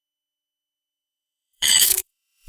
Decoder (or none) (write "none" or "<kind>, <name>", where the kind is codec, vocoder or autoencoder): autoencoder, DAC-VAE